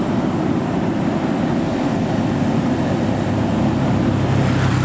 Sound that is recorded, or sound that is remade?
recorded